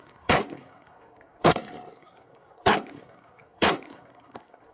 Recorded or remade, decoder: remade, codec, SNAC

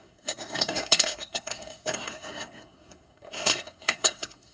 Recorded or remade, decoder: remade, codec, SNAC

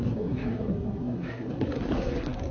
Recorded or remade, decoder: remade, codec, SNAC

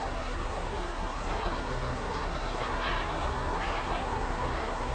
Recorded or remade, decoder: remade, codec, SNAC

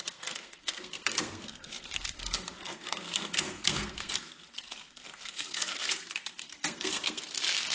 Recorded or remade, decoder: remade, codec, SNAC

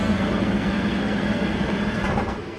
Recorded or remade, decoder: remade, codec, SNAC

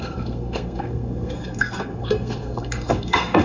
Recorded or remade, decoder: remade, codec, SNAC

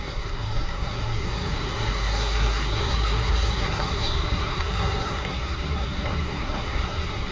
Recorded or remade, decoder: remade, codec, SNAC